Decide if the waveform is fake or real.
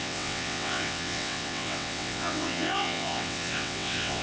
fake